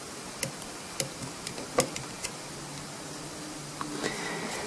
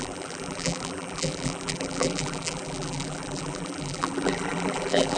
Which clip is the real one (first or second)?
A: first